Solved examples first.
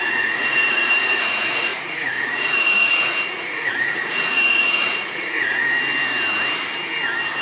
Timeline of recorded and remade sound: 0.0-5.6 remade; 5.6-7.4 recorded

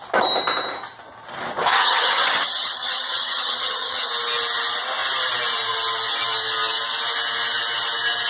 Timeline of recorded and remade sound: 0.0-1.7 recorded; 1.7-4.1 remade; 4.1-8.3 recorded

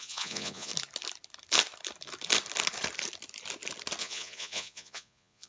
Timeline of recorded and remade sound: 0.0-0.7 remade; 0.7-4.0 recorded; 4.0-5.5 remade